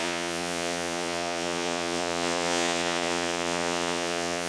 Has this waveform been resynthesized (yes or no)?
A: yes